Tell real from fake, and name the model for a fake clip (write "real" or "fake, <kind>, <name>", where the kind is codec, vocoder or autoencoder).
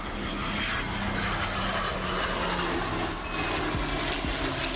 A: real